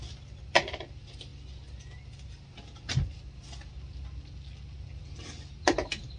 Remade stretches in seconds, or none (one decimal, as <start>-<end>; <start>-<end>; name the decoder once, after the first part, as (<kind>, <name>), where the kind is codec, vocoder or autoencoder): none